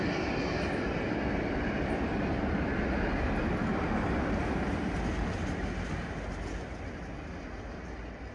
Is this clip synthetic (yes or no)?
no